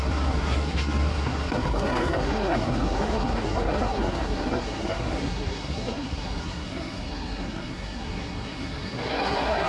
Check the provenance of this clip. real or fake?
fake